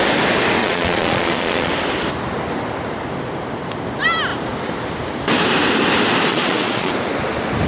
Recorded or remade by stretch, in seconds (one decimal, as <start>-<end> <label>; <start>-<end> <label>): 0.0-0.6 recorded; 0.6-1.7 remade; 1.7-6.3 recorded; 6.3-6.9 remade; 6.9-7.7 recorded